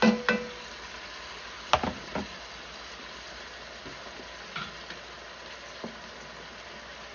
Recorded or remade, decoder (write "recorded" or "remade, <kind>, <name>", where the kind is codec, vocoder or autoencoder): recorded